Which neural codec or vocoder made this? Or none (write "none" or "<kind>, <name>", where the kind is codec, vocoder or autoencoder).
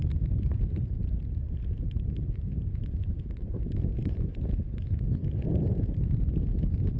vocoder, BigVGAN v2